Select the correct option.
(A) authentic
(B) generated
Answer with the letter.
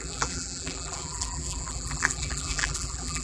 B